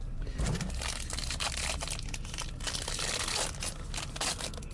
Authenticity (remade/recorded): recorded